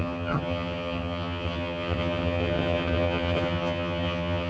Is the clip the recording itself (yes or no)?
no